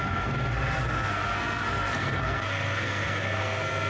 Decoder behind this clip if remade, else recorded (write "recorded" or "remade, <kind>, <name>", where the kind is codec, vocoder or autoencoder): remade, codec, SNAC